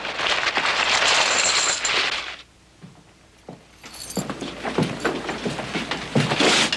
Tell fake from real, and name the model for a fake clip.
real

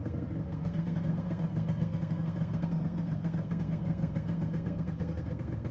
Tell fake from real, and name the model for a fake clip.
fake, codec, SNAC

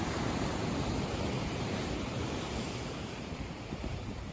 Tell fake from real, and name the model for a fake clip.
fake, vocoder, BigVGAN v2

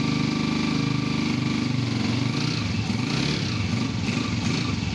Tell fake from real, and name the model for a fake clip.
real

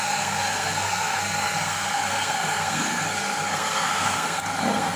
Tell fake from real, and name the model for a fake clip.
fake, codec, SNAC